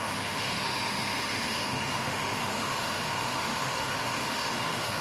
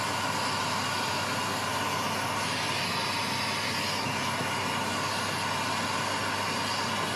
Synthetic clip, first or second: first